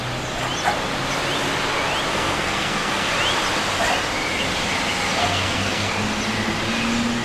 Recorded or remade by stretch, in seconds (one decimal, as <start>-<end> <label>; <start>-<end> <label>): 0.0-2.1 recorded; 2.1-3.1 remade; 3.1-5.2 recorded; 5.2-5.9 remade; 5.9-7.2 recorded